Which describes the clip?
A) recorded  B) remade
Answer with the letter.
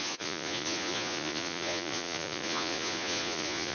B